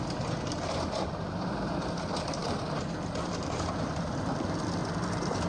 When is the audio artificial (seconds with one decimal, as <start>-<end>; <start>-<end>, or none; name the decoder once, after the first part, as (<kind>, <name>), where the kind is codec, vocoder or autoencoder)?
0.0-5.5 (vocoder, BigVGAN v2)